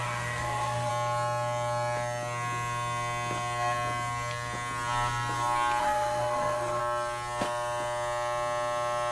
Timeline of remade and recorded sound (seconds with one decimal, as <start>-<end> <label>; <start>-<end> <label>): 0.0-0.9 remade; 0.9-5.8 recorded; 5.8-6.8 remade; 6.8-9.1 recorded